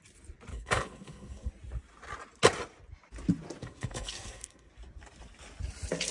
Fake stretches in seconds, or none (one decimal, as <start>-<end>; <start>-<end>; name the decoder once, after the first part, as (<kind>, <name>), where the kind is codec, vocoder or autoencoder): 0.5-1.5 (codec, SNAC); 3.6-4.7